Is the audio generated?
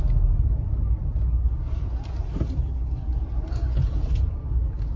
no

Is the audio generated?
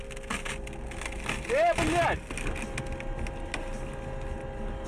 no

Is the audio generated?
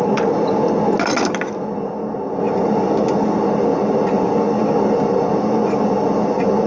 no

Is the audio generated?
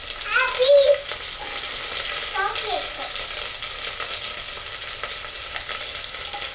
no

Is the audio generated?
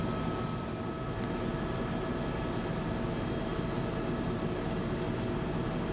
no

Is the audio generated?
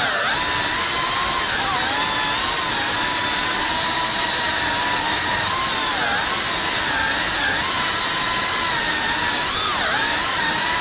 no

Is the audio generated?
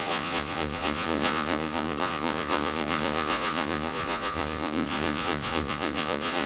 yes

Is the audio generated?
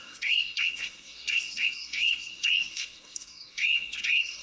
yes